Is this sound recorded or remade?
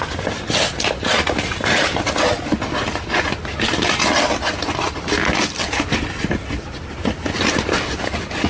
recorded